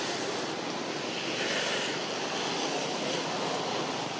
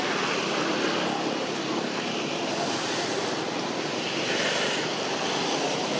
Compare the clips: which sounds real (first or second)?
first